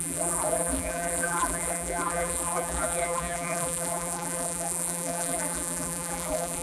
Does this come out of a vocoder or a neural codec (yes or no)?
yes